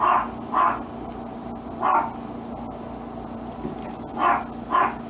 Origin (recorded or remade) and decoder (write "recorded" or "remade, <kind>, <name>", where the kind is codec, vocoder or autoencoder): recorded